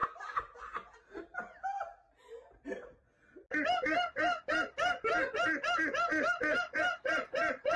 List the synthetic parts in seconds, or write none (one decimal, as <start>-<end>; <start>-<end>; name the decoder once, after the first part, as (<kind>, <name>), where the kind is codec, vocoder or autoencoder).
none

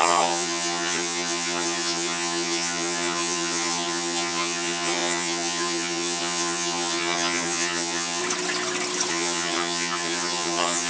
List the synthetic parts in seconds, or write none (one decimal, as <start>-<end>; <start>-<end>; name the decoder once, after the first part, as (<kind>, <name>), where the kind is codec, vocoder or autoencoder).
0.0-8.2 (vocoder, HiFi-GAN); 9.1-10.9

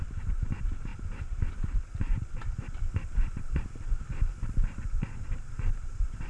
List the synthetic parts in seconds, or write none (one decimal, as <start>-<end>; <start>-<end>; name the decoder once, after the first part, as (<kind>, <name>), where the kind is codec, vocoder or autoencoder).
0.0-6.3 (vocoder, BigVGAN v2)